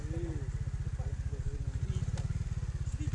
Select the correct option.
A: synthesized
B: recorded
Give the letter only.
B